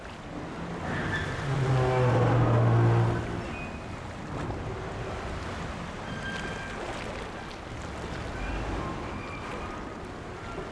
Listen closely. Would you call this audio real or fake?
real